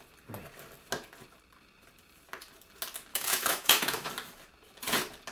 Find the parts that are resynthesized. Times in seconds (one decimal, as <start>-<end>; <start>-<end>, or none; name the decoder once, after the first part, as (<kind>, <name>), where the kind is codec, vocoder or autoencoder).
3.1-4.1 (autoencoder, DAC-VAE)

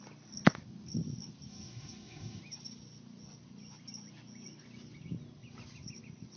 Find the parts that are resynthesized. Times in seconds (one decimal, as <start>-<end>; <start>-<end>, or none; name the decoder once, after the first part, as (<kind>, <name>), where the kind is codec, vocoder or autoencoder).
1.5-2.4 (autoencoder, DAC-VAE)

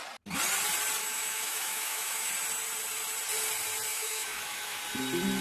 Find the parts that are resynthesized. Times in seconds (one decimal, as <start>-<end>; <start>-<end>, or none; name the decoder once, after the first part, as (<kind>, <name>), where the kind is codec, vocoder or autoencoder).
1.0-2.3 (autoencoder, DAC-VAE); 3.9-4.8

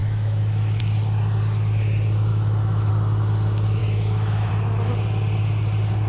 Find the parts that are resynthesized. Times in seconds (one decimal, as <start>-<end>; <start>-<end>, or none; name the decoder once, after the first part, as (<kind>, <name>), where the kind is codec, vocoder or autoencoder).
0.0-0.8 (autoencoder, DAC-VAE); 2.3-2.9; 3.8-4.5

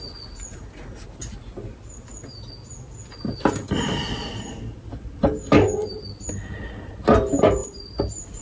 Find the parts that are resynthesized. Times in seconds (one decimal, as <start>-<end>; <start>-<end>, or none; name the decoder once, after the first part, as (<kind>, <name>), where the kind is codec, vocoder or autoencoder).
none

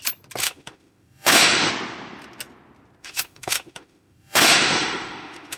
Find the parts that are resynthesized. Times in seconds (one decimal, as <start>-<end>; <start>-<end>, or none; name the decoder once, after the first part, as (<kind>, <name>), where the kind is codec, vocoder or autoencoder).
0.4-1.7 (autoencoder, DAC-VAE); 3.0-5.6

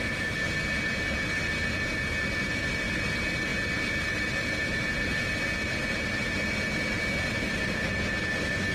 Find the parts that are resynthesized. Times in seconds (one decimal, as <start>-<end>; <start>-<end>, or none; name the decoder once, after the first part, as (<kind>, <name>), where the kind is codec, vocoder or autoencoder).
none

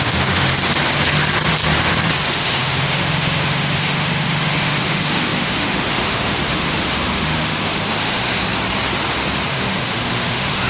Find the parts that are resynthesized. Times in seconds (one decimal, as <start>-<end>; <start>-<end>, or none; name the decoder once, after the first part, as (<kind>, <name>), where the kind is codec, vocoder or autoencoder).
0.0-0.5 (autoencoder, DAC-VAE); 2.2-8.4; 9.5-10.7